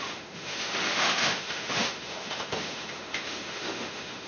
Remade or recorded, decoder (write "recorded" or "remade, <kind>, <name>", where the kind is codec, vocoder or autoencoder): remade, autoencoder, DAC-VAE